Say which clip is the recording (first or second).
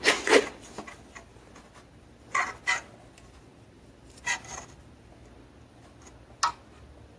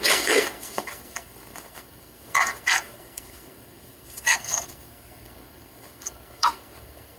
first